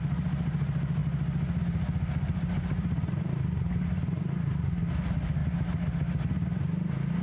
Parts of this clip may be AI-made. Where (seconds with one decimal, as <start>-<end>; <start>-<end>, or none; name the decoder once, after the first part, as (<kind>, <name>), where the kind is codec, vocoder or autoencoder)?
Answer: 0.0-1.0 (vocoder, BigVGAN v2); 1.6-7.2